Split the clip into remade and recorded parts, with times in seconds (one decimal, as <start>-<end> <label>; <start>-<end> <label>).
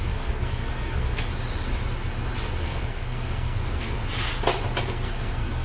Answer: 0.0-1.3 remade; 1.3-2.6 recorded; 2.6-4.0 remade; 4.0-4.8 recorded; 4.8-5.6 remade